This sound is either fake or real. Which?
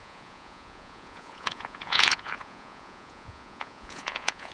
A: fake